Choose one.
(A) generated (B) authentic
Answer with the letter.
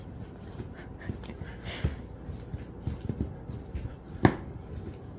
B